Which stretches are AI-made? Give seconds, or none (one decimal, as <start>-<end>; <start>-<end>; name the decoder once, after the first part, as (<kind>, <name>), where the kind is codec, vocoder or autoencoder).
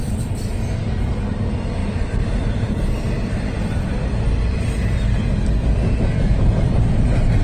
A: none